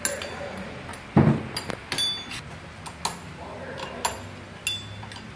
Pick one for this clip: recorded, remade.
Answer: recorded